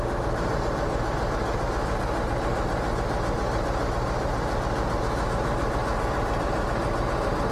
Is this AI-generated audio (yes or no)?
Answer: no